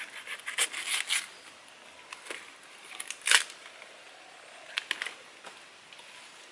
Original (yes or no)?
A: yes